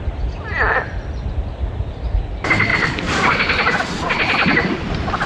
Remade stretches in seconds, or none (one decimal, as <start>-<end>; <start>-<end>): 2.7-3.3